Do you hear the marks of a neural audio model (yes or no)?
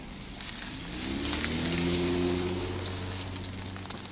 no